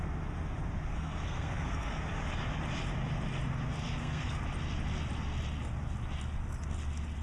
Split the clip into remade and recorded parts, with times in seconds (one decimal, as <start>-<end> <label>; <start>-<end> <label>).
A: 0.0-0.9 recorded; 0.9-2.0 remade; 2.0-3.9 recorded; 3.9-4.4 remade; 4.4-7.2 recorded